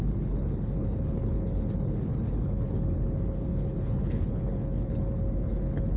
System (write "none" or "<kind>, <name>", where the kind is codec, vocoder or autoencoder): codec, HILCodec